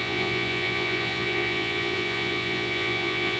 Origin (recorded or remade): remade